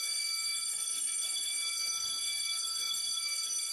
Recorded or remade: remade